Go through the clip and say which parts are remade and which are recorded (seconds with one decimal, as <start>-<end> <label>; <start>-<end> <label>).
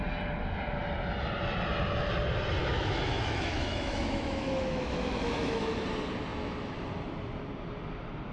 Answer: 0.0-2.6 recorded; 2.6-5.7 remade; 5.7-8.3 recorded